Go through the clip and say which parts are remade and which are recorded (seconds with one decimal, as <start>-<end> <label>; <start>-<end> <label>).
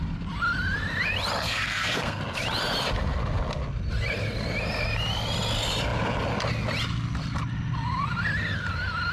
0.0-1.4 recorded; 1.4-2.2 remade; 2.2-9.1 recorded